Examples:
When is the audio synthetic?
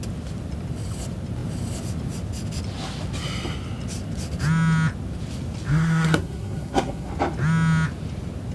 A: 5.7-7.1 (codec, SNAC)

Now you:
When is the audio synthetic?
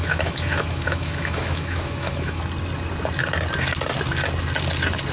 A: 0.0-2.4 (autoencoder, DAC-VAE)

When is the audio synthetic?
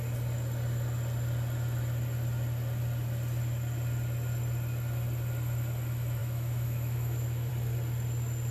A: 6.2-7.5 (autoencoder, DAC-VAE)